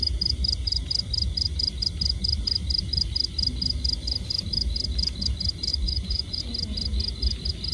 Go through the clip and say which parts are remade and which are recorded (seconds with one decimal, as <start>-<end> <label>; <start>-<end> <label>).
0.0-5.7 recorded; 5.7-6.4 remade; 6.4-7.7 recorded